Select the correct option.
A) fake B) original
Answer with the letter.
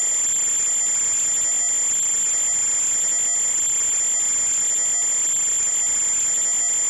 B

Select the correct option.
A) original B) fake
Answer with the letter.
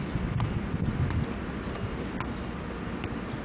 A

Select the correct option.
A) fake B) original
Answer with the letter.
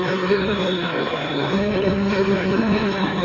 A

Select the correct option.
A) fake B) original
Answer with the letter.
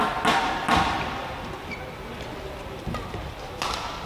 B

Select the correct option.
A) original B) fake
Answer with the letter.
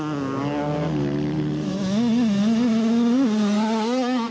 A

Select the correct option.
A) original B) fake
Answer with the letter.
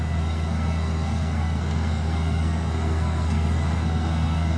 B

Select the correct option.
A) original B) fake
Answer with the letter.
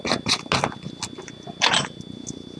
A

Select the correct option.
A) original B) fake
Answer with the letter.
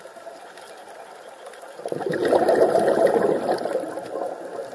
A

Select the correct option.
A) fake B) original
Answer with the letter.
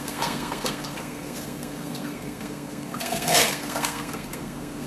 A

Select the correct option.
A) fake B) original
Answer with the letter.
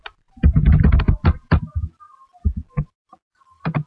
B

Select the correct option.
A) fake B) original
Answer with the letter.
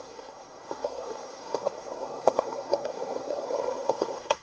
A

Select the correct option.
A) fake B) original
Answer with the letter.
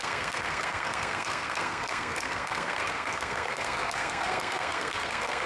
A